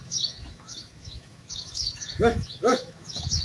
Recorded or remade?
remade